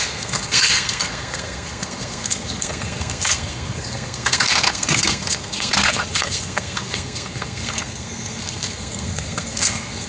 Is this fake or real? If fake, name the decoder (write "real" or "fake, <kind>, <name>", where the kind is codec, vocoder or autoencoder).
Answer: fake, codec, SNAC